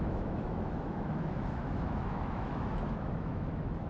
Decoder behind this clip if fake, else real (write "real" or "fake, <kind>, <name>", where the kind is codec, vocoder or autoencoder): fake, autoencoder, DAC-VAE